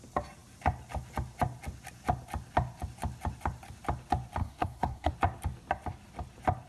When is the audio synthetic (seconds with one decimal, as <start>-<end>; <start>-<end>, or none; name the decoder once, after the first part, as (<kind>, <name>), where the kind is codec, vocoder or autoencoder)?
4.4-5.1 (codec, SNAC)